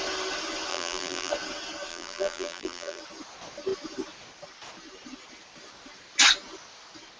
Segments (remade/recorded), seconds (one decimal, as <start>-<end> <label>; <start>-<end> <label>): 0.0-0.7 recorded; 0.7-1.3 remade; 1.3-1.9 recorded; 1.9-3.0 remade; 3.0-7.2 recorded